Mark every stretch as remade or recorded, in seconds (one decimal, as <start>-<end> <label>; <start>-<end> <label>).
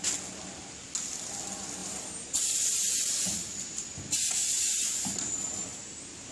0.0-1.8 recorded; 1.8-2.7 remade; 2.7-5.7 recorded; 5.7-6.3 remade